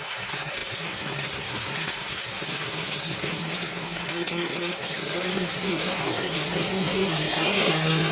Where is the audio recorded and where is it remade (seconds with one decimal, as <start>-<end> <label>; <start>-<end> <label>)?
0.0-8.1 remade